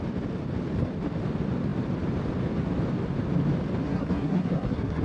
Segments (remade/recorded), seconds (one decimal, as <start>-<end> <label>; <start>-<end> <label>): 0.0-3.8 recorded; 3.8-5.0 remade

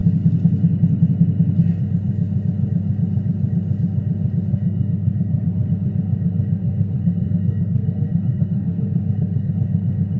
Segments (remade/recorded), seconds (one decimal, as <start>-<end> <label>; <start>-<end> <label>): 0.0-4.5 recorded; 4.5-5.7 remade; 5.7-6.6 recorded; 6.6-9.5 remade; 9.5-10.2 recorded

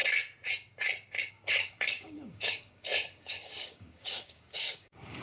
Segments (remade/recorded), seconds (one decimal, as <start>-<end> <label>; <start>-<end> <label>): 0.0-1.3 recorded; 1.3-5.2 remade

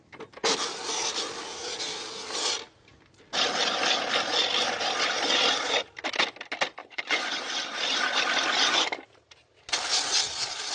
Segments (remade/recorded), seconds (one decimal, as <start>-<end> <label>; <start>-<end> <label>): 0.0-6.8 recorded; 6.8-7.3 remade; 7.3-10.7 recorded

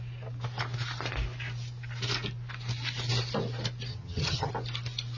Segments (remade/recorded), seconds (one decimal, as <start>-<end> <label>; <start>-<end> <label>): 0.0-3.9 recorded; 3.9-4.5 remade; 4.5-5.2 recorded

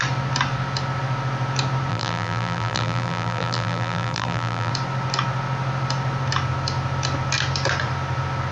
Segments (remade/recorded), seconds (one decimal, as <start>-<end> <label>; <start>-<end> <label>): 0.0-1.9 recorded; 1.9-4.7 remade; 4.7-8.5 recorded

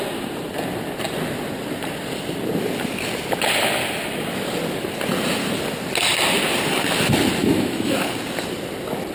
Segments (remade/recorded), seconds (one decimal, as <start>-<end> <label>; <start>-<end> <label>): 0.0-7.4 recorded; 7.4-8.1 remade; 8.1-9.1 recorded